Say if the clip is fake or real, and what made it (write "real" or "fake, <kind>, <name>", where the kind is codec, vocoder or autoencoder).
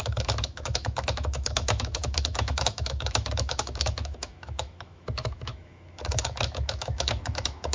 fake, autoencoder, DAC-VAE